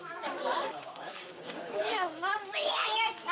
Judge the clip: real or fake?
fake